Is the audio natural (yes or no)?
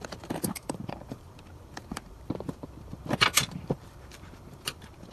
no